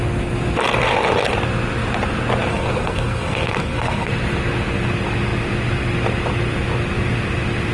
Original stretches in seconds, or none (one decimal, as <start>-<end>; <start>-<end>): 0.0-2.5; 4.1-7.7